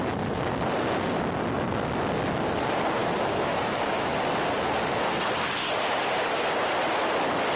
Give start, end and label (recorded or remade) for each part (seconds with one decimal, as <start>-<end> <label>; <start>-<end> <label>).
0.0-3.0 recorded; 3.0-4.2 remade; 4.2-7.6 recorded